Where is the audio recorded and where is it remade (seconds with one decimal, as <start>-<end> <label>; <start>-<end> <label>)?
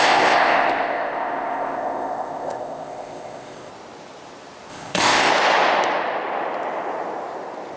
0.0-3.7 remade; 3.7-4.7 recorded; 4.7-5.3 remade; 5.3-7.8 recorded